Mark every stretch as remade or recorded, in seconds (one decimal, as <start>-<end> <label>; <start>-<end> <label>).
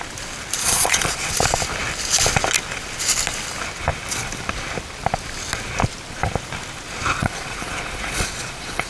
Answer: 0.0-0.6 recorded; 0.6-1.3 remade; 1.3-7.2 recorded; 7.2-8.9 remade